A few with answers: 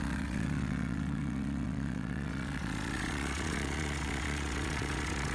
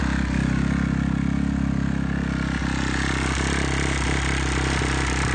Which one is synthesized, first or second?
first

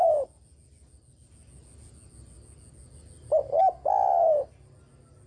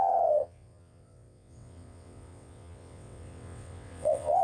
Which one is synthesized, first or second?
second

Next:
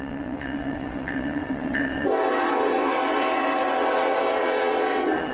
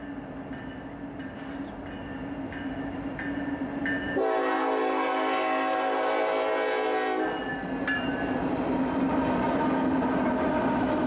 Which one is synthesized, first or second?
first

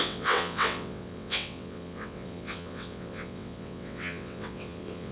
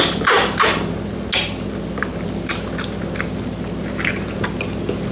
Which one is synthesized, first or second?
first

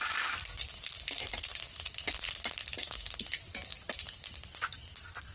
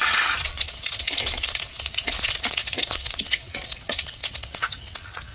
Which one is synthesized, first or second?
second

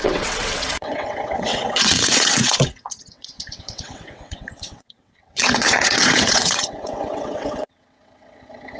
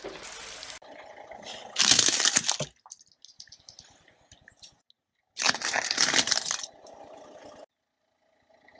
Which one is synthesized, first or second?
first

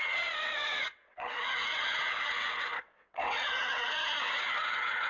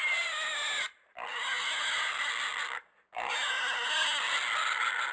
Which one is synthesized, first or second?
first